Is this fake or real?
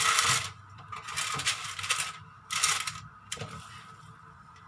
real